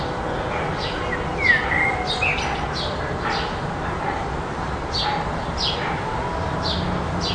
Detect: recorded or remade recorded